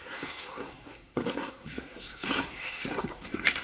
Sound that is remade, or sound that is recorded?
remade